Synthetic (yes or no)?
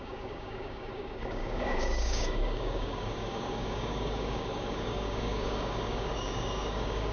yes